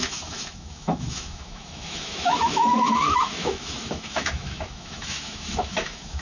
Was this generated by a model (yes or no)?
yes